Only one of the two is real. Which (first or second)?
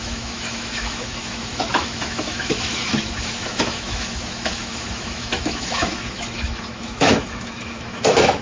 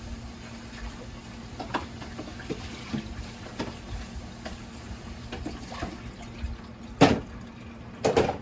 second